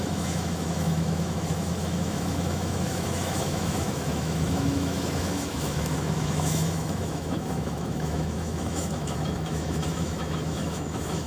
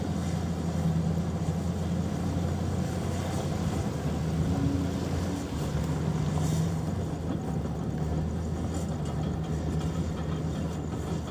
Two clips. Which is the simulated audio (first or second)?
first